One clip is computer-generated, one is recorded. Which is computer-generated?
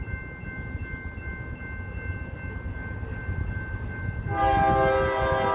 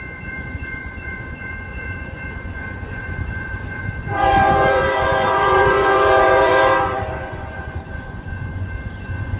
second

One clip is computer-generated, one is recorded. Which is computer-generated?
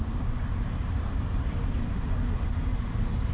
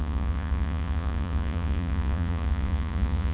second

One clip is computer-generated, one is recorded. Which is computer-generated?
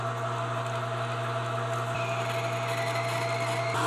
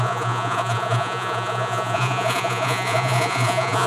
second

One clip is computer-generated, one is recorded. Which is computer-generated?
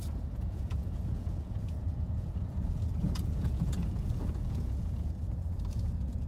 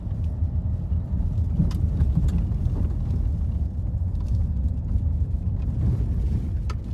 first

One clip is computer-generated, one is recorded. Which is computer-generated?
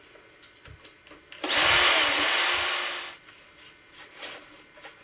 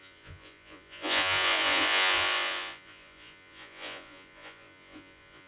second